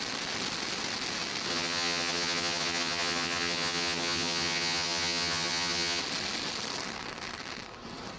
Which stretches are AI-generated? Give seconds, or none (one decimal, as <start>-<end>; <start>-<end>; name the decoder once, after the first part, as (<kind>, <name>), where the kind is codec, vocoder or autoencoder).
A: 1.5-6.0 (vocoder, HiFi-GAN)